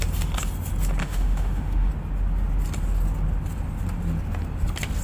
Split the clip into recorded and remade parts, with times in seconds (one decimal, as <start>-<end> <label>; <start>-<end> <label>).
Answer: 0.0-1.0 recorded; 1.0-1.9 remade; 1.9-5.0 recorded